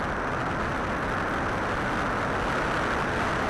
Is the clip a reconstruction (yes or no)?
no